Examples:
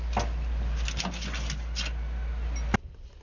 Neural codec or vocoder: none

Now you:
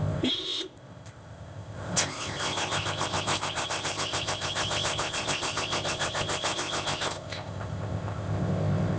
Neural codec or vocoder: codec, ZipCodec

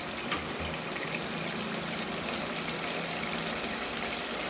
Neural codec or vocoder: none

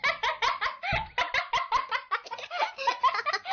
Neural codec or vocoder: none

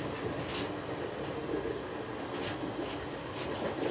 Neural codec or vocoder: none